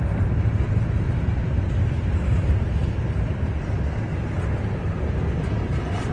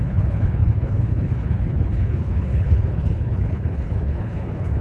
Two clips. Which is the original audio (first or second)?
first